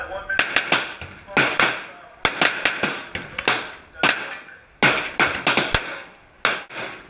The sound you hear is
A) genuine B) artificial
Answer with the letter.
A